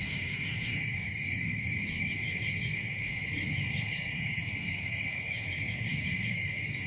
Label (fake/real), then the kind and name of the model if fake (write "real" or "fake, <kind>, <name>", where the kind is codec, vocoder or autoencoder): fake, codec, DAC